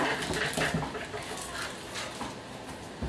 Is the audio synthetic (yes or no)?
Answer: no